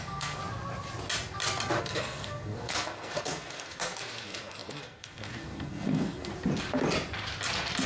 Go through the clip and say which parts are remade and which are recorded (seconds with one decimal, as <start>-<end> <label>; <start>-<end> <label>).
0.0-0.4 remade; 0.4-1.8 recorded; 1.8-6.3 remade; 6.3-7.9 recorded